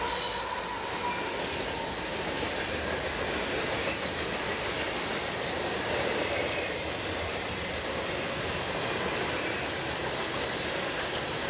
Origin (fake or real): real